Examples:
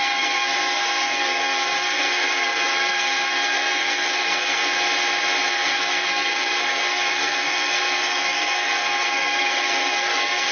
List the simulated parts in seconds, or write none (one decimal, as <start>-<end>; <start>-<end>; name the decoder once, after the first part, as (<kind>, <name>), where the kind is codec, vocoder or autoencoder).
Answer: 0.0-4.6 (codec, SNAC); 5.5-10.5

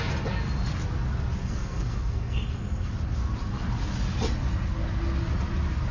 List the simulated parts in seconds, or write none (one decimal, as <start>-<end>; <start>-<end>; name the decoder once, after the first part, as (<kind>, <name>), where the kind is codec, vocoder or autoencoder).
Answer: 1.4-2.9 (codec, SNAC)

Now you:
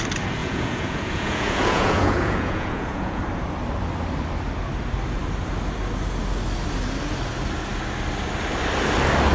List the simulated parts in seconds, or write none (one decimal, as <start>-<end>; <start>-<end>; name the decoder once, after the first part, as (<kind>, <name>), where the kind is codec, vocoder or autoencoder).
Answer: 0.4-3.2 (vocoder, Vocos)